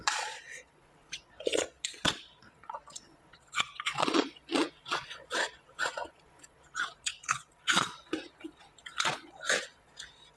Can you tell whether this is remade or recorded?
remade